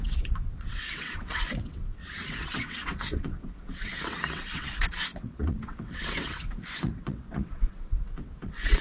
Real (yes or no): no